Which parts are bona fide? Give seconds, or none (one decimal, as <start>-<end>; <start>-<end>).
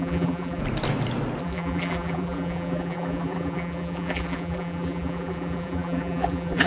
0.6-1.4